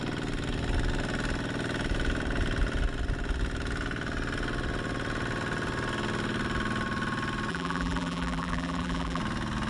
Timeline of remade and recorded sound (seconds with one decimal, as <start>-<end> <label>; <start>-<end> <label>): 0.0-7.5 recorded; 7.5-9.2 remade; 9.2-9.7 recorded